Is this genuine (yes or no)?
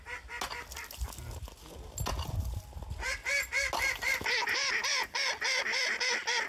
yes